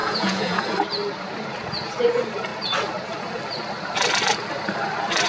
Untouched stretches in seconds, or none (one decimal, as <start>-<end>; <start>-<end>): 0.6-5.3